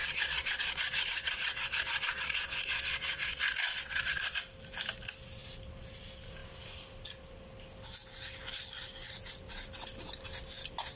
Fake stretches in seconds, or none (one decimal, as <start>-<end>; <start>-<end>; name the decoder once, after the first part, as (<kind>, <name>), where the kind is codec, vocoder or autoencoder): 0.0-4.4 (vocoder, Vocos)